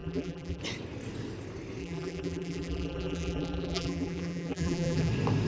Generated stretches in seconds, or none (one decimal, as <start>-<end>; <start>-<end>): 0.0-0.6; 1.8-5.1

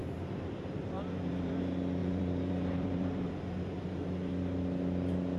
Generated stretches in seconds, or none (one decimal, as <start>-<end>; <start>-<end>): 0.0-1.5; 2.0-3.3

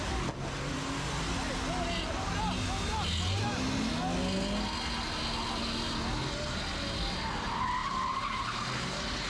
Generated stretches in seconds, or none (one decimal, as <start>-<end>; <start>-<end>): 7.8-9.3

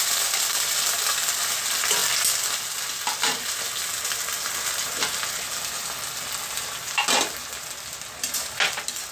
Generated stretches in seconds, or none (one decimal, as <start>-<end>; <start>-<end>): none

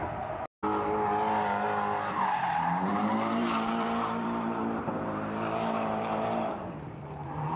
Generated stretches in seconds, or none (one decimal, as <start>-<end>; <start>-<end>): 2.9-7.6

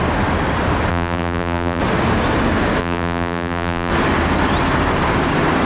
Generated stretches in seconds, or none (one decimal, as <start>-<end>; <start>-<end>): 0.9-1.8; 2.8-3.9

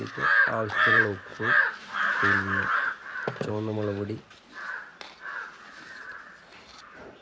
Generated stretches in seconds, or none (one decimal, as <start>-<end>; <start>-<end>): 0.0-4.9; 5.8-7.2

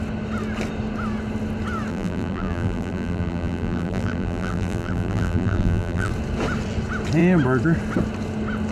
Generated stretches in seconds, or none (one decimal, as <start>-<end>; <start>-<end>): 1.9-6.1